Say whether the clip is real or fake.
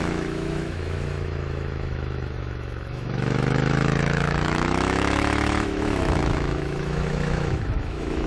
fake